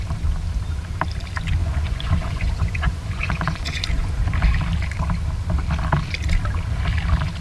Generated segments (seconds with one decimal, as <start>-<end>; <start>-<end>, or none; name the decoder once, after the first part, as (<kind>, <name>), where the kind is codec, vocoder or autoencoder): 1.6-4.2 (vocoder, Vocos)